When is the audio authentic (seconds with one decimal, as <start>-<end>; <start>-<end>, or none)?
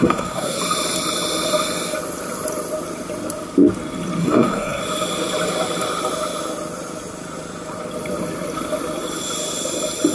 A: 0.6-4.2; 4.8-10.1